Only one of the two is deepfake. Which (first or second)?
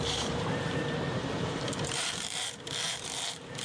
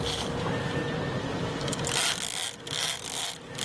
first